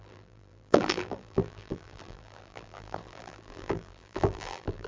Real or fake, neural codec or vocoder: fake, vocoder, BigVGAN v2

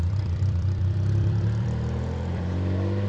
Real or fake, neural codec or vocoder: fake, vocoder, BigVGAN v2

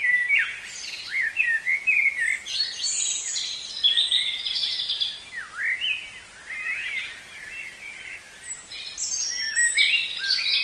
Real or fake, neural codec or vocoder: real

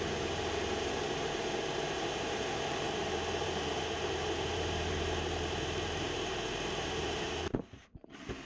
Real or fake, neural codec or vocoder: fake, vocoder, BigVGAN v2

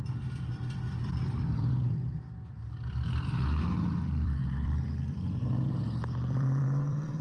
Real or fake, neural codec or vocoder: fake, vocoder, BigVGAN v2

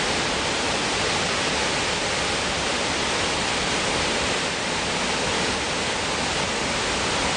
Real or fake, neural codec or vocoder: real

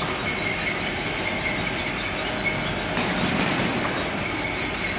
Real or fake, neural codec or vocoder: real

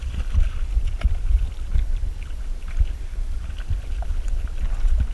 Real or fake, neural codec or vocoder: real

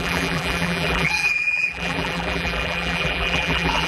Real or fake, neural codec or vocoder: fake, vocoder, BigVGAN v2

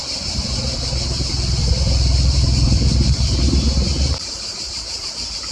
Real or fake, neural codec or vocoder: fake, vocoder, BigVGAN v2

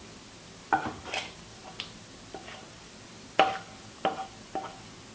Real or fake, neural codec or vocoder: real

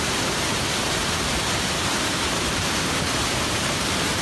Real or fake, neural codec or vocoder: fake, vocoder, BigVGAN v2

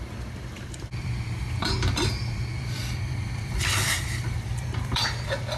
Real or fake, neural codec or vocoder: fake, vocoder, BigVGAN v2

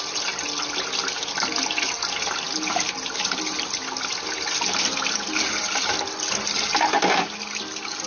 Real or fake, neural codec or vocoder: real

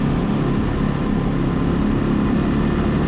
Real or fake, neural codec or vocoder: real